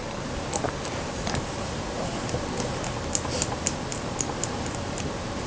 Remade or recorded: recorded